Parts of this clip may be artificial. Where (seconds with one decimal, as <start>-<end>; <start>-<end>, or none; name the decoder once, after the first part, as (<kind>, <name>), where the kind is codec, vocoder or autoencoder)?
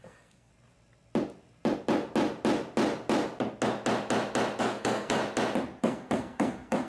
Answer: 0.0-0.5 (codec, SNAC); 4.6-5.2; 5.8-6.9